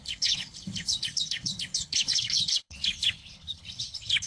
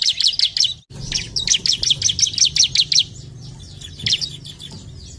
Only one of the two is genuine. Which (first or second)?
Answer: second